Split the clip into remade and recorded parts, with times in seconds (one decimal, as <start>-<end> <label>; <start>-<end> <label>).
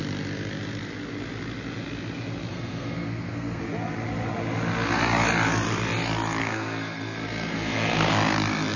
0.0-2.5 recorded; 2.5-3.6 remade; 3.6-6.4 recorded; 6.4-8.1 remade; 8.1-8.8 recorded